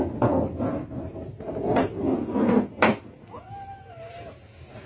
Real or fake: real